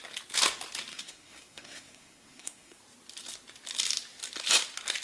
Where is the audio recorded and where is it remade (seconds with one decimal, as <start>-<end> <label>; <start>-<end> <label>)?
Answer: 0.0-0.9 recorded; 0.9-2.8 remade; 2.8-5.0 recorded